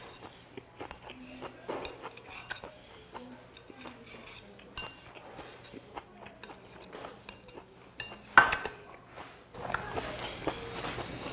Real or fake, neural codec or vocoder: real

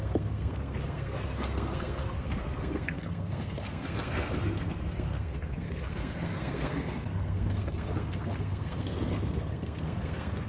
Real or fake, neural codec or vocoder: fake, codec, SNAC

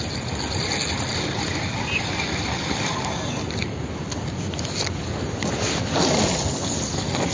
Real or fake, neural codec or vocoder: real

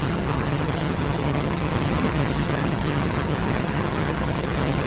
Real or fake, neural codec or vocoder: fake, vocoder, HiFi-GAN